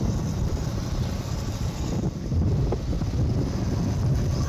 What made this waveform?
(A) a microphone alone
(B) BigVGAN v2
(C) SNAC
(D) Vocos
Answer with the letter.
B